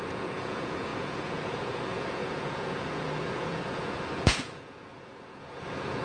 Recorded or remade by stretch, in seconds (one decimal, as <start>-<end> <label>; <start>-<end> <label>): 0.0-6.0 remade